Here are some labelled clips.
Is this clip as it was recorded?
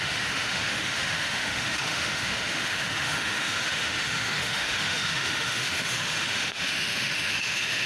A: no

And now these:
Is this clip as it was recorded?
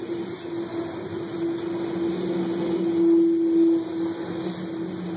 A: yes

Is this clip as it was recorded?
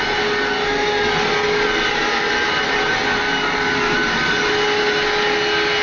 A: yes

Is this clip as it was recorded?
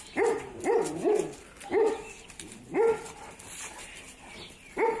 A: yes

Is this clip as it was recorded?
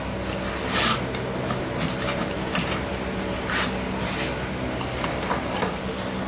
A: yes